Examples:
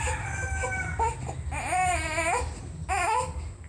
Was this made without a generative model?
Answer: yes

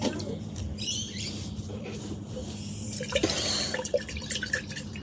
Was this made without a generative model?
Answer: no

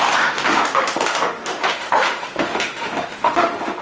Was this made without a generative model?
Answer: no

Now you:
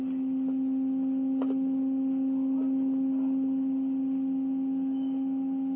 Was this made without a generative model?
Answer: yes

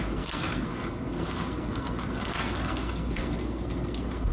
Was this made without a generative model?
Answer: no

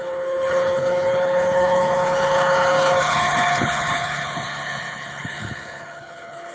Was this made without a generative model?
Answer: no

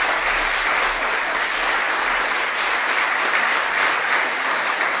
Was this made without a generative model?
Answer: yes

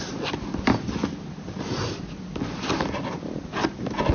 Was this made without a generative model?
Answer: yes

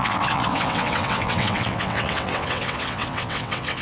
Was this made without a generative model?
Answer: no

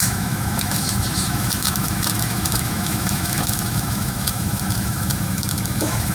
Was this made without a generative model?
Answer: no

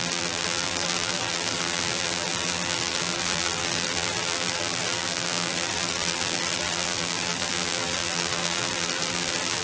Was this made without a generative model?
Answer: no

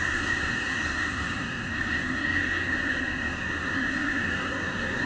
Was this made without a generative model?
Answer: no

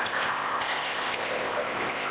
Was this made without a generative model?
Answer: no